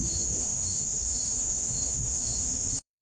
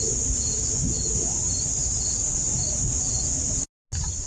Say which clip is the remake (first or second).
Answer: first